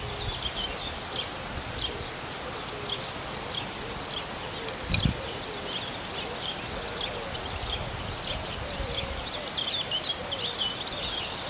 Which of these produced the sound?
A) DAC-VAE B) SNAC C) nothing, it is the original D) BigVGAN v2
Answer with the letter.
C